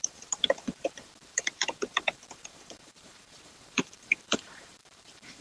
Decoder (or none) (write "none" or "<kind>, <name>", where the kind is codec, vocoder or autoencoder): vocoder, BigVGAN v2